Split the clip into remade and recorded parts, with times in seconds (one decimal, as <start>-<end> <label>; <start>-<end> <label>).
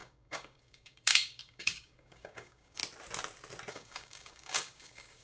0.0-2.8 remade; 2.8-3.7 recorded; 3.7-5.2 remade